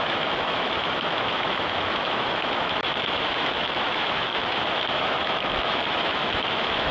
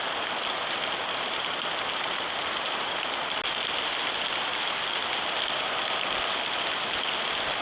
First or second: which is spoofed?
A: first